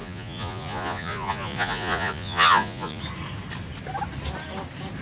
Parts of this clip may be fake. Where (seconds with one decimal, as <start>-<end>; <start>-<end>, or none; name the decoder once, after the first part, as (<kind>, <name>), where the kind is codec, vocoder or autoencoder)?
0.0-3.0 (vocoder, Vocos)